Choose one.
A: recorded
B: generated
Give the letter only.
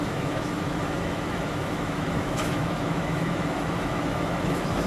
B